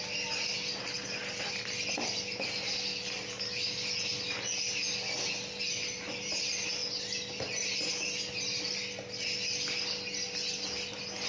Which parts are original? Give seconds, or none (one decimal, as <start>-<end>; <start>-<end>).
0.0-11.3